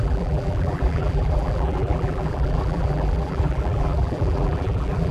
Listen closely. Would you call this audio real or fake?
fake